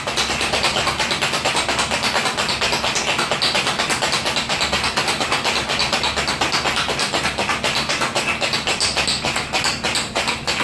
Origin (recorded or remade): recorded